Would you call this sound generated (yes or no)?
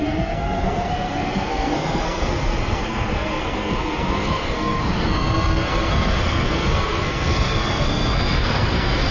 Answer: yes